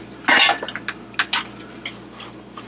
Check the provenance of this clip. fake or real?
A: real